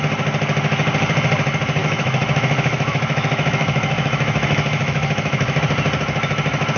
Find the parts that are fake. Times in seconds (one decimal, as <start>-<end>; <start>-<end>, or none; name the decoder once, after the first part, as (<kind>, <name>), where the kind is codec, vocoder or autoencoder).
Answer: 1.8-5.6 (autoencoder, DAC-VAE)